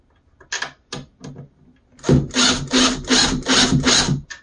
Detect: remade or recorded recorded